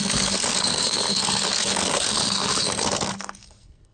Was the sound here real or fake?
fake